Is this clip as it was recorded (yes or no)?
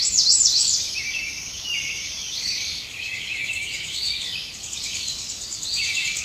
no